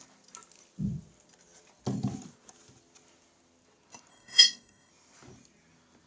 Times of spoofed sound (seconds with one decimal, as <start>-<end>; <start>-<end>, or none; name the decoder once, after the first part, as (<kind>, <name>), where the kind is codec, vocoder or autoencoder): 4.1-4.9 (codec, DAC)